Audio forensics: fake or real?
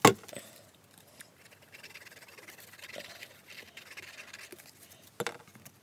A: real